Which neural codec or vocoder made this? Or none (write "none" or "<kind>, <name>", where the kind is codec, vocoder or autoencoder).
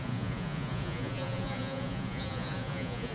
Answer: vocoder, Vocos